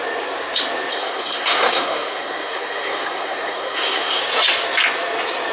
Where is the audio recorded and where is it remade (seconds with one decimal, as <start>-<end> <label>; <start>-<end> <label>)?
0.0-0.9 recorded; 0.9-4.2 remade; 4.2-5.5 recorded